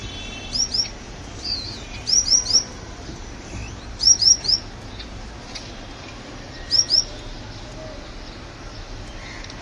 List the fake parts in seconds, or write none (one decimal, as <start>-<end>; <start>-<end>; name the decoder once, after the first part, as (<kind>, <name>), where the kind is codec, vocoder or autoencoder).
0.0-2.9 (vocoder, BigVGAN v2)